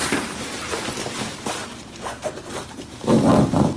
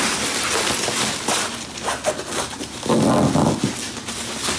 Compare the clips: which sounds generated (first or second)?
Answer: first